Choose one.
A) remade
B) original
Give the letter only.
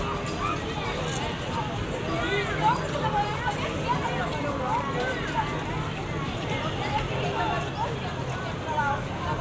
B